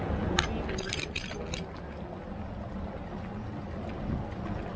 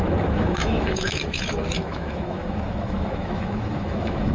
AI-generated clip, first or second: second